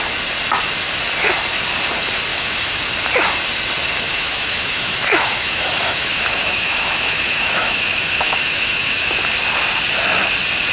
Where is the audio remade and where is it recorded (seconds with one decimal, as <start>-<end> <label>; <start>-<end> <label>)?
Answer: 0.0-2.3 recorded; 2.3-2.9 remade; 2.9-4.1 recorded; 4.1-9.2 remade; 9.2-10.7 recorded

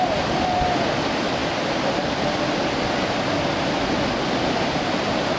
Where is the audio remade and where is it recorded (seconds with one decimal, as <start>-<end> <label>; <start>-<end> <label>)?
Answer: 0.0-5.4 recorded

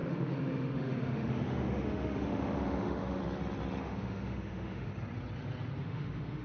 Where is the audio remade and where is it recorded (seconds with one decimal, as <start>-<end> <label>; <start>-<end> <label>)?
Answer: 0.0-3.2 remade; 3.2-3.8 recorded; 3.8-4.9 remade; 4.9-5.8 recorded; 5.8-6.4 remade

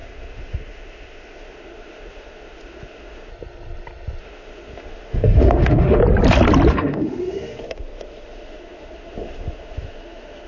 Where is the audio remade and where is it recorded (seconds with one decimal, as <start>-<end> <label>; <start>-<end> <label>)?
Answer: 0.0-3.3 remade; 3.3-4.2 recorded; 4.2-6.0 remade; 6.0-6.7 recorded; 6.7-10.5 remade

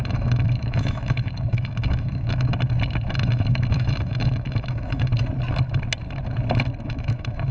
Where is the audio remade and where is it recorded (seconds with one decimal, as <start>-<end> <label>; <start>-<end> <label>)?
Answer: 0.0-2.5 remade; 2.5-3.1 recorded; 3.1-5.1 remade; 5.1-6.8 recorded; 6.8-7.5 remade

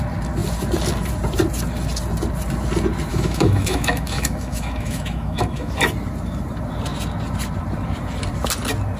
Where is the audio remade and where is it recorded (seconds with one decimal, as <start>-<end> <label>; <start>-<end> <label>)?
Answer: 0.0-3.1 recorded; 3.1-5.7 remade; 5.7-9.0 recorded

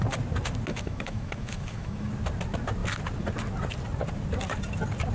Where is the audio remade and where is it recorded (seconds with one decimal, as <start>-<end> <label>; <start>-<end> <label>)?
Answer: 0.0-0.7 recorded; 0.7-2.1 remade; 2.1-5.1 recorded

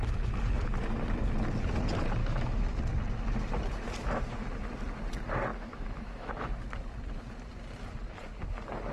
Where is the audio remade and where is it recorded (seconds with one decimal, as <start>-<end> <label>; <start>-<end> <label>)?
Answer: 0.0-2.2 recorded; 2.2-2.8 remade; 2.8-5.5 recorded; 5.5-6.3 remade; 6.3-8.9 recorded